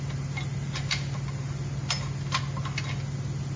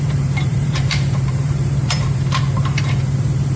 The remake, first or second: second